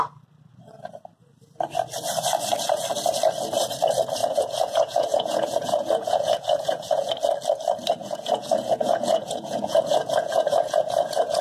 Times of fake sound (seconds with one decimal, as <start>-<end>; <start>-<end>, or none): 4.2-7.1; 8.0-11.4